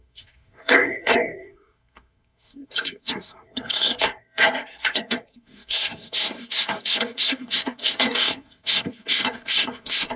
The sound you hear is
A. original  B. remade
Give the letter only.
B